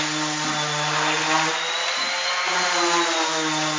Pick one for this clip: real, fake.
real